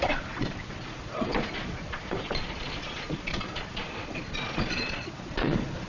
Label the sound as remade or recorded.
remade